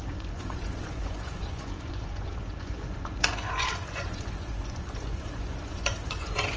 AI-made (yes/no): yes